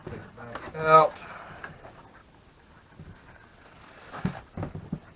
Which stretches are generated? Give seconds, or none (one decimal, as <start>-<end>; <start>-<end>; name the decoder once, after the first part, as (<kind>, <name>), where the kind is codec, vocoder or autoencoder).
none